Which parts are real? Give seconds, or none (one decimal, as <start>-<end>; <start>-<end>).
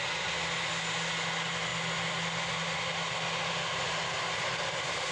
0.0-5.1